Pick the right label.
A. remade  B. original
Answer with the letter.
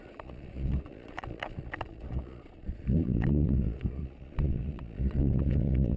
A